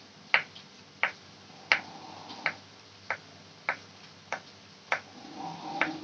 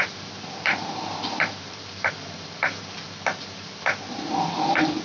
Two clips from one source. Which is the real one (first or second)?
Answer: first